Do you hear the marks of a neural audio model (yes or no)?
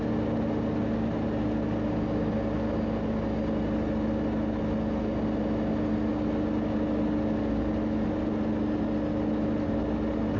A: no